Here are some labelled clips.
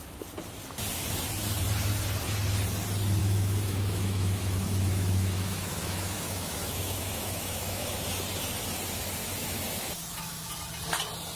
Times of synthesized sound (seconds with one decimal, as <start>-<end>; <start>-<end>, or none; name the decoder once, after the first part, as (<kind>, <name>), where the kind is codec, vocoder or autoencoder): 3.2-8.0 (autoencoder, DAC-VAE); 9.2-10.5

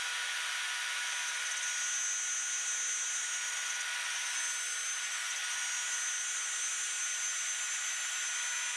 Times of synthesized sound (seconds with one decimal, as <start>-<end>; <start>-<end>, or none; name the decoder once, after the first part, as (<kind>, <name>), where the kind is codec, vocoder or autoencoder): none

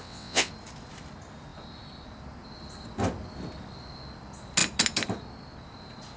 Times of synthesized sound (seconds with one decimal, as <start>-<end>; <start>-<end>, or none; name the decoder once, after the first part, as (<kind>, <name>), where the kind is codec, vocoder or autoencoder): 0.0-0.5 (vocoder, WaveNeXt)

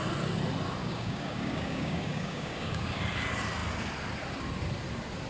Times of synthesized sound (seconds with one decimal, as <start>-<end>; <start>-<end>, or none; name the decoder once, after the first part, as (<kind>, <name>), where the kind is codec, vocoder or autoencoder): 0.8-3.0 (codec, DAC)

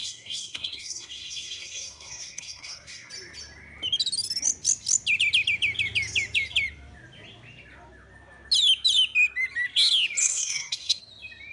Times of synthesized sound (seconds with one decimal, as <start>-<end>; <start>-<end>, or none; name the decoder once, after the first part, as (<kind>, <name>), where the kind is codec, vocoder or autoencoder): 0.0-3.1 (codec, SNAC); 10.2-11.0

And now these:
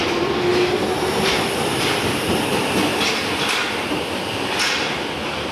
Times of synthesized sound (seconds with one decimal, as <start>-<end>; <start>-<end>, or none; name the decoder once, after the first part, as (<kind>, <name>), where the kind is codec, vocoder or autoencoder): none

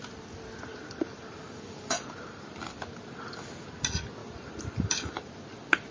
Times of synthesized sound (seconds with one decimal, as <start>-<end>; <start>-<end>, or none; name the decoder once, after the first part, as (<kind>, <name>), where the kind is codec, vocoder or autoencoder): 0.7-2.7 (vocoder, BigVGAN v2); 4.2-5.3

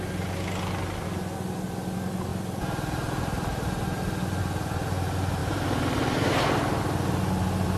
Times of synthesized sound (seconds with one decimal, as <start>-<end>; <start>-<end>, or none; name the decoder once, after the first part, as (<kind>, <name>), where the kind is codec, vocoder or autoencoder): 5.4-6.5 (vocoder, BigVGAN v2)